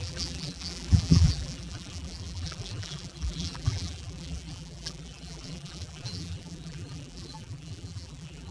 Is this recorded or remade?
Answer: remade